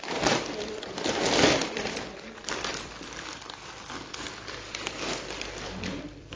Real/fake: fake